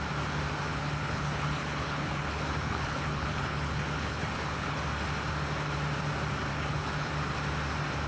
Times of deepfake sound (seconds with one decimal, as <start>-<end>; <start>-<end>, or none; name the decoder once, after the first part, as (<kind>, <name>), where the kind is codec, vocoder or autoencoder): 0.7-4.8 (codec, HILCodec); 6.5-7.1